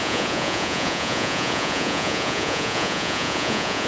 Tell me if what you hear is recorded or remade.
remade